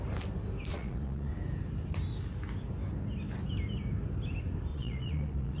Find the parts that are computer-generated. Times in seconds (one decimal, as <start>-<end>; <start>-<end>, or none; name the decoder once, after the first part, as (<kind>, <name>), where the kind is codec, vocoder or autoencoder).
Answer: 0.7-1.3 (vocoder, Vocos); 4.7-5.6